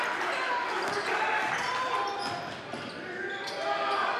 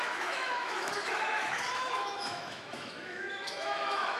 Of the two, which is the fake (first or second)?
second